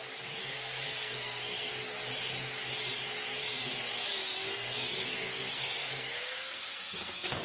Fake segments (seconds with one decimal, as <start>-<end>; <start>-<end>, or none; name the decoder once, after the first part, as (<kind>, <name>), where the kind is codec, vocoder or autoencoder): 0.4-1.7 (codec, SNAC); 4.2-7.4